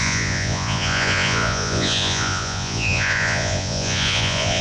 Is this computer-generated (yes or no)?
yes